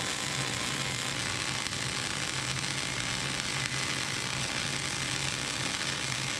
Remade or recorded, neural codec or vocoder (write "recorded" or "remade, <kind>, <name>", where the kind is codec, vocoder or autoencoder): recorded